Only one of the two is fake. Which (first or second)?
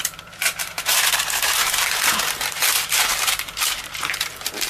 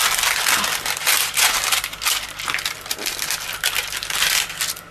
first